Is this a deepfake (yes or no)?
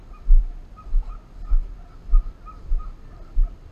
no